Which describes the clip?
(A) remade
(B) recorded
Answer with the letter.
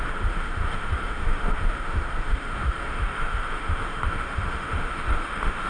A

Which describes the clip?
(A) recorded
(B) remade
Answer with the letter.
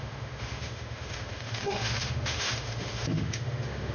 B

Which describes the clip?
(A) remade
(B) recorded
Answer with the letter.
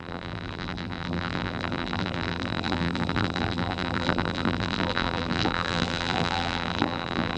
A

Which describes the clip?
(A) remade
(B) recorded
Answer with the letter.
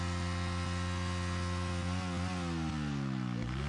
B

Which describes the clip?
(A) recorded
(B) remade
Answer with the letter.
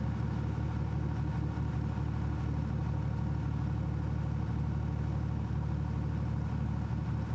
A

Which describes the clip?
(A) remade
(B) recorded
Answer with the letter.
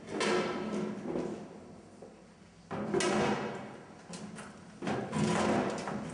B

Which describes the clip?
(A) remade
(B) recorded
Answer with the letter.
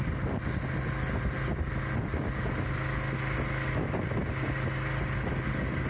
B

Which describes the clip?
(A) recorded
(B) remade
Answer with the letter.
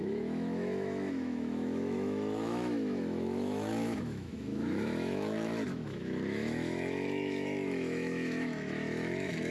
B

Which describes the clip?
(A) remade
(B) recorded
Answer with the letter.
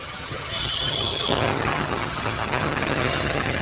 A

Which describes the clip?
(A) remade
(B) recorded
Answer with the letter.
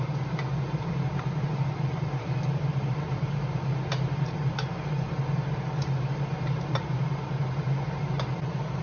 A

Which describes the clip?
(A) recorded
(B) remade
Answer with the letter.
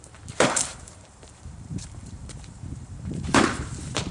B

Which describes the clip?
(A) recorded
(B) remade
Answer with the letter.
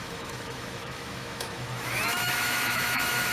B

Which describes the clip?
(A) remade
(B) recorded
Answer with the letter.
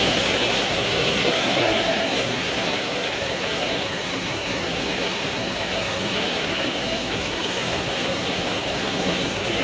A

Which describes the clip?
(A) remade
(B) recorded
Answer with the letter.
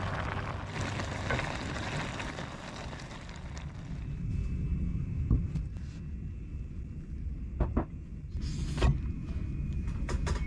B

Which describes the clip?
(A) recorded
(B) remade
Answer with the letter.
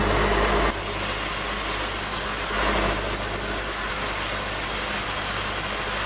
A